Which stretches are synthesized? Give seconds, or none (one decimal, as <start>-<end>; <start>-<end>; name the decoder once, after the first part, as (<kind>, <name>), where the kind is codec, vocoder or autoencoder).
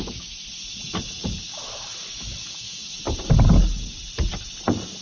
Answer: 1.5-2.8 (autoencoder, DAC-VAE)